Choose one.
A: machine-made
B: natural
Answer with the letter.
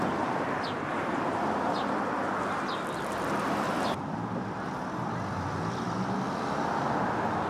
B